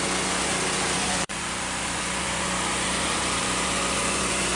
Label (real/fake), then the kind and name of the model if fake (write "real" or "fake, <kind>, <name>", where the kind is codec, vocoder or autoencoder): fake, vocoder, Vocos